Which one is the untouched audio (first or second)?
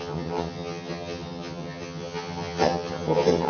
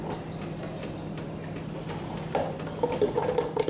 second